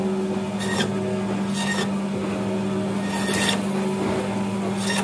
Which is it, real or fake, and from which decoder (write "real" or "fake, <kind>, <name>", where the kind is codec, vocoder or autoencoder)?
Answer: real